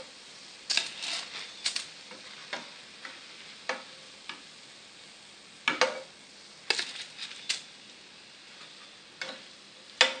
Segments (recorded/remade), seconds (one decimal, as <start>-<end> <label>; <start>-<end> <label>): 0.0-10.2 recorded